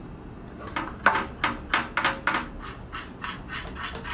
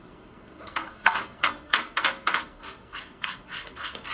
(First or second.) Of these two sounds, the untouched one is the first